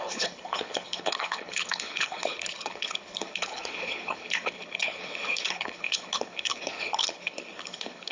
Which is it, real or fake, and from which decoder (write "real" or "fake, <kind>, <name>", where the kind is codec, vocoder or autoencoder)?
fake, codec, HILCodec